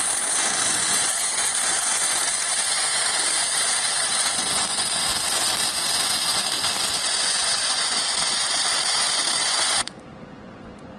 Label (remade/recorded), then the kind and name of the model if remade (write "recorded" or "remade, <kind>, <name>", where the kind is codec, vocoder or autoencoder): remade, vocoder, Vocos